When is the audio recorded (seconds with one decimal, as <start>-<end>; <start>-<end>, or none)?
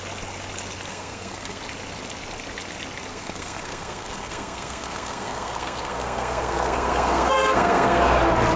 0.0-0.9; 1.6-3.1; 8.0-8.6